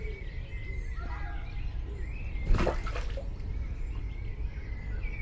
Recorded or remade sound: recorded